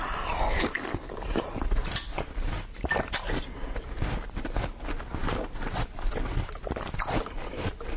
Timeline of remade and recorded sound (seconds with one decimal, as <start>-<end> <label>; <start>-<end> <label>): 0.0-8.0 recorded